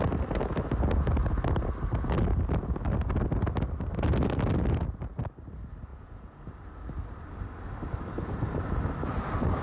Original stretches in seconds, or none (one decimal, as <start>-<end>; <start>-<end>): 0.0-5.9; 6.5-9.6

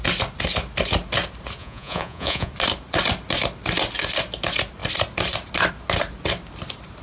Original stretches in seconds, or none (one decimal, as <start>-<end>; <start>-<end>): 0.0-1.6; 2.5-7.0

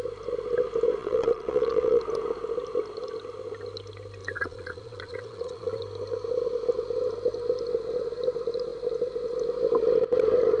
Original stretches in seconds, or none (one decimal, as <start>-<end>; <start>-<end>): 0.0-1.0; 2.0-4.2; 5.8-10.6

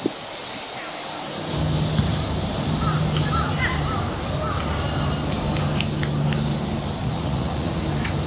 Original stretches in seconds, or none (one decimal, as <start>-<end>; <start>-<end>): 0.0-7.0; 7.8-8.3

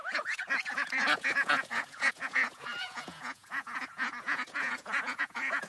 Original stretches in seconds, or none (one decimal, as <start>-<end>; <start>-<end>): none

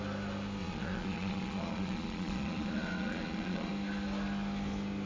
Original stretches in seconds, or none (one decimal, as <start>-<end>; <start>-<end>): 0.0-0.6; 3.7-5.1